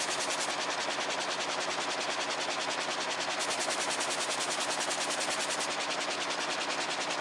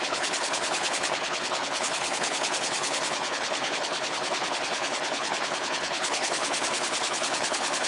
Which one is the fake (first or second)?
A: second